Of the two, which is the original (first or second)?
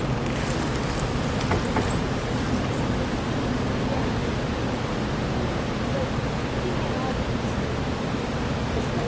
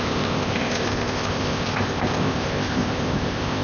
first